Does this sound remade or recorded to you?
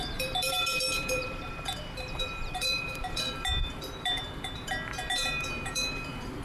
remade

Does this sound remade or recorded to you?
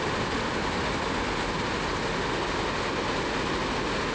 recorded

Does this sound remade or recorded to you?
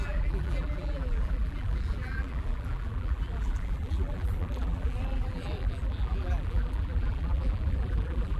remade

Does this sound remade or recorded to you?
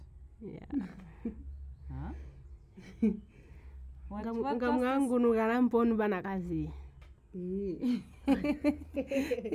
recorded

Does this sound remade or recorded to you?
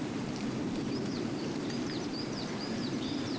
remade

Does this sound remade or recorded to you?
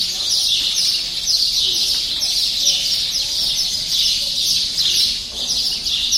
recorded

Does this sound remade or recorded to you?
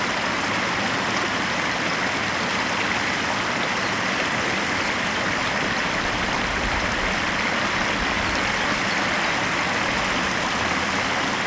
recorded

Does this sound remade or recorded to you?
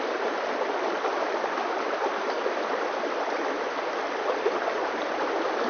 remade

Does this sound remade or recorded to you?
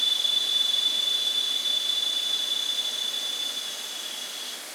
recorded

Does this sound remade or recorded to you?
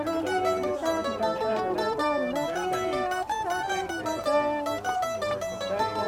recorded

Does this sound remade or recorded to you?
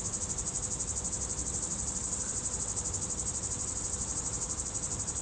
remade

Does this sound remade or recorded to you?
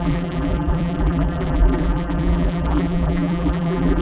remade